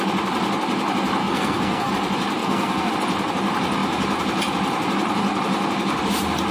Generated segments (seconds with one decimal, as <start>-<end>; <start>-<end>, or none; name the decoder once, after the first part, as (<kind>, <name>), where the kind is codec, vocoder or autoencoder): 1.2-1.9 (codec, SNAC); 2.4-2.9